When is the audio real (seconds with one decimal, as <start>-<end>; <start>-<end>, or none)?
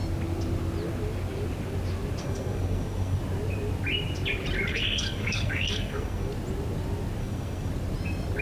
0.0-2.2; 3.2-4.7; 6.3-7.2; 7.7-8.4